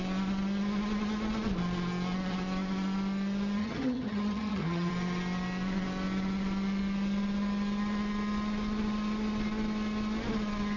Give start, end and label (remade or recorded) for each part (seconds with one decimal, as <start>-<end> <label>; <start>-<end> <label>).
0.0-3.6 recorded; 3.6-4.9 remade; 4.9-10.8 recorded

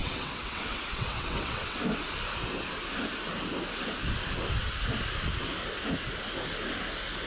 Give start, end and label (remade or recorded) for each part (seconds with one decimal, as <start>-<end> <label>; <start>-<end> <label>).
0.0-1.8 remade; 1.8-7.3 recorded

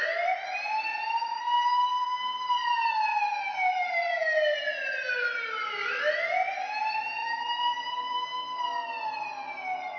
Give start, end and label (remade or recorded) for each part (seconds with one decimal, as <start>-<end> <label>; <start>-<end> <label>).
0.0-0.9 recorded; 0.9-1.4 remade; 1.4-3.1 recorded; 3.1-4.7 remade; 4.7-7.2 recorded; 7.2-8.0 remade; 8.0-10.0 recorded

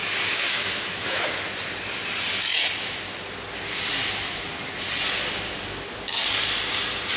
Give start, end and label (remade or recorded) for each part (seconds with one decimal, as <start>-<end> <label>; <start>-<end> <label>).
0.0-1.3 remade; 1.3-7.2 recorded

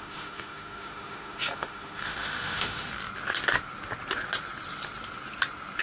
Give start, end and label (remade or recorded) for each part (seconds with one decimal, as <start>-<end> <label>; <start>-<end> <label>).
0.0-2.9 remade; 2.9-5.8 recorded

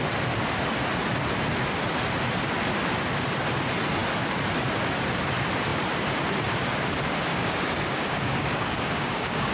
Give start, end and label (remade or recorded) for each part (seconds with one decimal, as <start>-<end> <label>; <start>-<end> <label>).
0.0-7.3 recorded; 7.3-9.5 remade

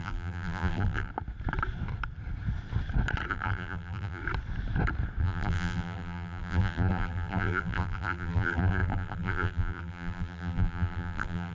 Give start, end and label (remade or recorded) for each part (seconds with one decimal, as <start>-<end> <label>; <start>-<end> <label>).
0.0-1.1 remade; 1.1-3.3 recorded; 3.3-4.2 remade; 4.2-5.2 recorded; 5.2-11.5 remade